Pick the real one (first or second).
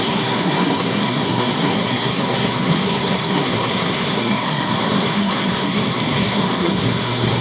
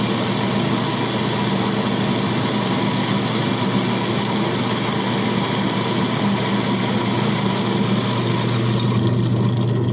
second